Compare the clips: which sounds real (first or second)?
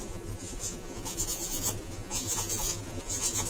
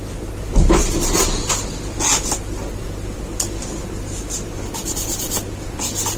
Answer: second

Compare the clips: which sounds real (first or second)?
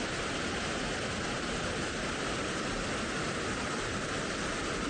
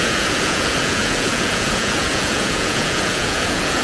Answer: first